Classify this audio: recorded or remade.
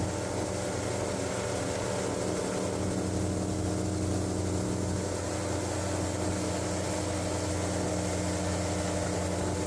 recorded